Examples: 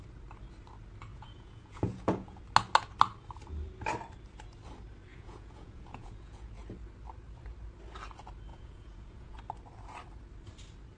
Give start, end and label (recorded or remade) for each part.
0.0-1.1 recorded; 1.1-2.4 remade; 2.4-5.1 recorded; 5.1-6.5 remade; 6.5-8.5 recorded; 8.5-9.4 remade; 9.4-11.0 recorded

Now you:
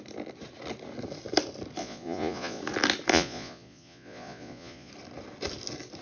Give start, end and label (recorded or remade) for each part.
0.0-1.8 recorded; 1.8-2.6 remade; 2.6-3.1 recorded; 3.1-4.9 remade; 4.9-6.0 recorded

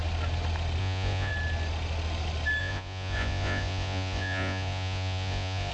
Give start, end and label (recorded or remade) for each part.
0.0-0.8 recorded; 0.8-1.3 remade; 1.3-2.6 recorded; 2.6-5.7 remade

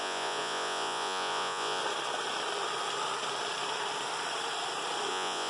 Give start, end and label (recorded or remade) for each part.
0.0-1.8 remade; 1.8-5.1 recorded; 5.1-5.5 remade

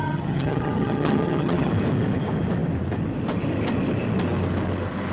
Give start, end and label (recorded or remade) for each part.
0.0-1.7 remade; 1.7-5.1 recorded